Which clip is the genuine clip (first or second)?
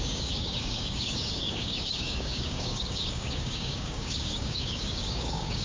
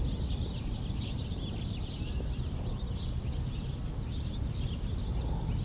second